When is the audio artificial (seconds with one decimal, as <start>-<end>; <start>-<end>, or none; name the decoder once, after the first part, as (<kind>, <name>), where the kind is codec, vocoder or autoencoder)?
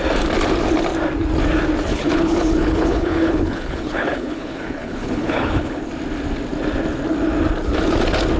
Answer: 1.9-5.9 (codec, HILCodec)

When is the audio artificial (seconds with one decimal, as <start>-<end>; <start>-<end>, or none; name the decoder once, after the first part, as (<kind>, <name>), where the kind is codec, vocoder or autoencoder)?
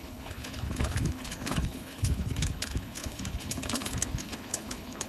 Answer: 0.0-5.1 (codec, HILCodec)